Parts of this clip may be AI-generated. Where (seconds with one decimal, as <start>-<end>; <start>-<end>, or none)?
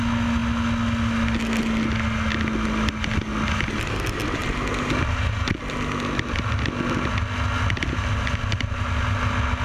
none